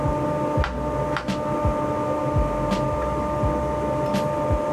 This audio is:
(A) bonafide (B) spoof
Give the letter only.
A